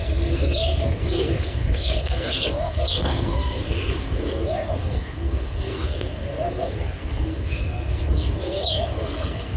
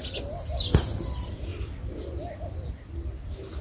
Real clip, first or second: second